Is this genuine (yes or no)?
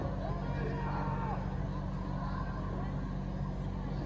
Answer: yes